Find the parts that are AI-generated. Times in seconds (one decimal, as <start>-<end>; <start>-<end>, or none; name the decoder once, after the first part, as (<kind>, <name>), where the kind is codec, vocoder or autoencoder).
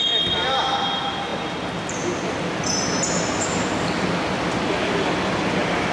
none